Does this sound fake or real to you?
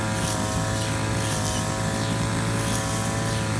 real